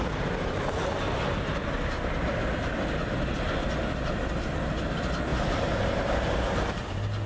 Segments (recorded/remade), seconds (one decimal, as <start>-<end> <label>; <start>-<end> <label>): 0.0-7.3 recorded